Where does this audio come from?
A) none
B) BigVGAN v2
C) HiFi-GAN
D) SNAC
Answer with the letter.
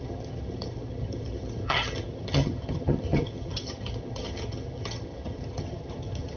C